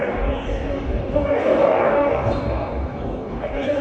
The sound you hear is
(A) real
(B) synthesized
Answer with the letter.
B